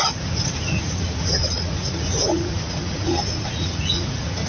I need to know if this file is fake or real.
fake